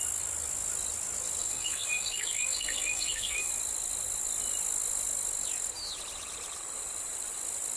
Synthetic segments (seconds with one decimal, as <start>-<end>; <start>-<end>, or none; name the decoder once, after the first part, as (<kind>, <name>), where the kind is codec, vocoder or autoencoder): 1.4-3.5 (codec, SNAC)